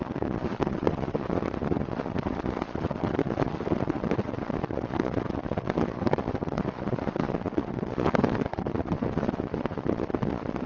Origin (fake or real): fake